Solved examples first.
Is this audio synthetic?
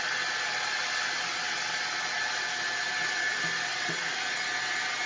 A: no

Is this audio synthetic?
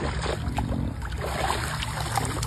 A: no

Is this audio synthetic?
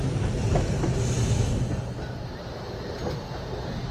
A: no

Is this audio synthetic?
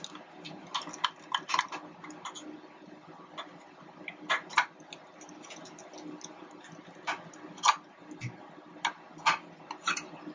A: no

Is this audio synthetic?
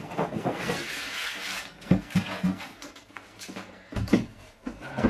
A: yes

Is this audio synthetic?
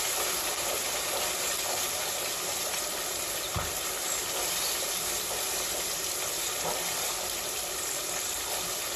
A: yes